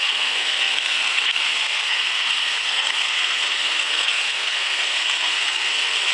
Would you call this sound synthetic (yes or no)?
yes